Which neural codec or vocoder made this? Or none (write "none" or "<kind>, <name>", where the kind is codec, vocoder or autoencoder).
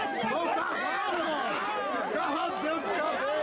none